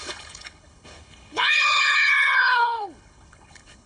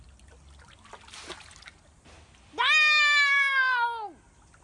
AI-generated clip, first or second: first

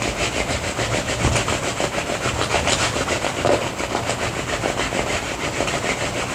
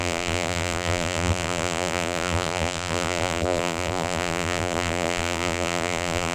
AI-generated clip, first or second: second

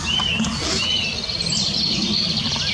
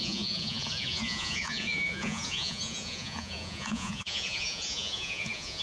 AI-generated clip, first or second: second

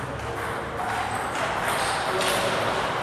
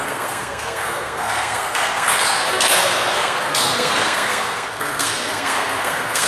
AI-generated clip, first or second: second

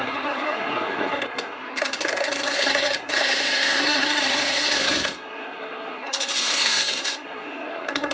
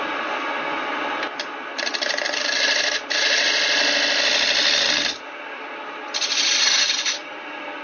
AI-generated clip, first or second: first